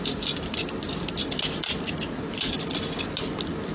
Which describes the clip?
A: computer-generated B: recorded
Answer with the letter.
B